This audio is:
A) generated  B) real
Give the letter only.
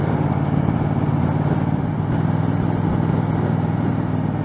B